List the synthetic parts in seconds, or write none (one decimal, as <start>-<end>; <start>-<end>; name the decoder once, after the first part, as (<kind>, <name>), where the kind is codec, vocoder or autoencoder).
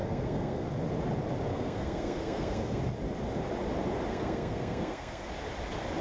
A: 0.0-0.7 (codec, SNAC); 1.5-2.8; 4.1-5.3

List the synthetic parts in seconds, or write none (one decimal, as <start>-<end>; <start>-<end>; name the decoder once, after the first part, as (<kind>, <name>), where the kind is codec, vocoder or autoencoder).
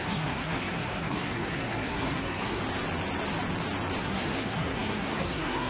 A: 0.0-2.6 (codec, SNAC); 4.0-5.7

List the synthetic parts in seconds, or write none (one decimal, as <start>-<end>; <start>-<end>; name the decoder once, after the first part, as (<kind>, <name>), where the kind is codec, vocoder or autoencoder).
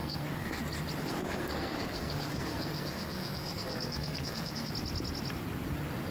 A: 0.0-0.6 (codec, SNAC); 1.0-4.7